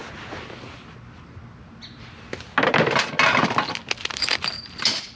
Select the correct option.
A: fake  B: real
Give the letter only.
B